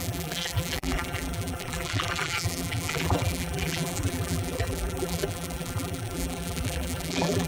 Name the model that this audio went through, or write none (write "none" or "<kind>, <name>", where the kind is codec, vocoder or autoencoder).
vocoder, BigVGAN v2